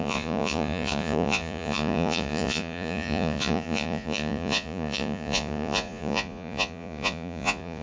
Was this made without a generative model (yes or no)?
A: no